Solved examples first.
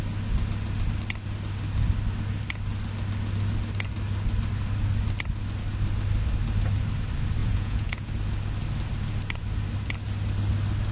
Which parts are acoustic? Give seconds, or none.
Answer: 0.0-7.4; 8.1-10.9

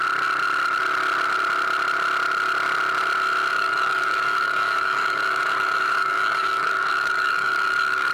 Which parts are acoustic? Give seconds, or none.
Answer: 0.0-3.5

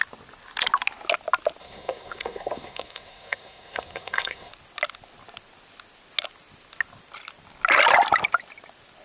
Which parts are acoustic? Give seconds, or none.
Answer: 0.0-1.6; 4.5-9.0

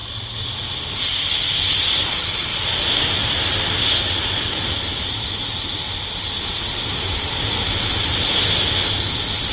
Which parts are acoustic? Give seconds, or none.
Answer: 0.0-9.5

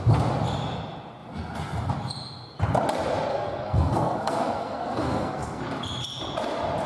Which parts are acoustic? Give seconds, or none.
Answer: 0.0-3.3; 5.6-6.9